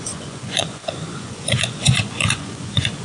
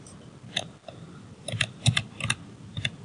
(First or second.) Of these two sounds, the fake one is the first